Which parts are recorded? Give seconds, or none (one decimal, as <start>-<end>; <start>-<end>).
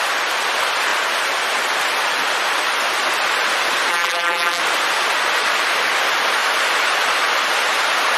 0.0-3.9; 4.6-8.2